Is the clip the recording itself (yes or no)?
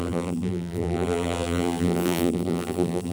no